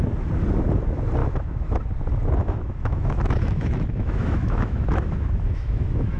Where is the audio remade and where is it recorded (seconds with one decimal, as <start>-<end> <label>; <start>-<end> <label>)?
0.0-1.2 recorded; 1.2-1.8 remade; 1.8-2.4 recorded; 2.4-6.2 remade